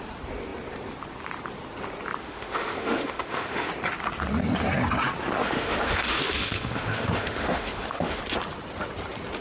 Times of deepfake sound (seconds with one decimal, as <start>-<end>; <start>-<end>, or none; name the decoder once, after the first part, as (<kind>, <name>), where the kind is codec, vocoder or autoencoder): 2.2-3.7 (autoencoder, DAC-VAE); 5.4-8.2